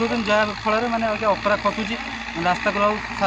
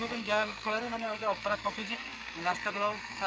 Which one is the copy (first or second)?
second